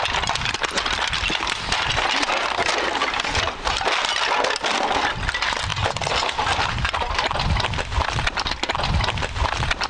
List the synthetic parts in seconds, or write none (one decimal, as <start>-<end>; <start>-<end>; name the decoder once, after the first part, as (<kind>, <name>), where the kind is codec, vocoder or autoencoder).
none